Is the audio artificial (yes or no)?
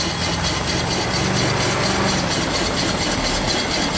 no